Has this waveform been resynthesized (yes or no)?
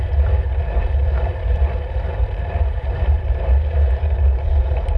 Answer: yes